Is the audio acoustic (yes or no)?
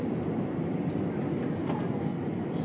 yes